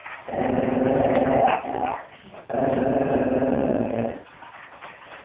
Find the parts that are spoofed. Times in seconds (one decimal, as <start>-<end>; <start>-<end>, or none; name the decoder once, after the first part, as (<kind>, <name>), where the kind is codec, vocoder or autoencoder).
1.6-2.2 (vocoder, Vocos); 3.5-4.6